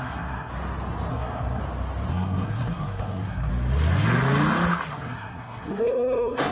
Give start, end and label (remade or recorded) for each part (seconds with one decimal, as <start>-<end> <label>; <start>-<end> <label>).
0.0-0.5 remade; 0.5-1.1 recorded; 1.1-1.6 remade; 1.6-2.1 recorded; 2.1-3.5 remade; 3.5-4.9 recorded; 4.9-6.5 remade